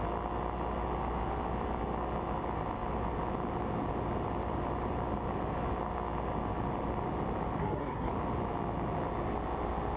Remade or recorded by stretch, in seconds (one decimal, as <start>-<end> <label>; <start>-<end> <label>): 0.0-7.6 recorded; 7.6-8.1 remade; 8.1-10.0 recorded